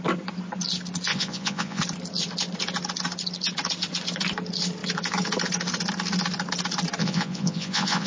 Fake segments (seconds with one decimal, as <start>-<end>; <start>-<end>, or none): 1.1-1.8; 7.0-8.1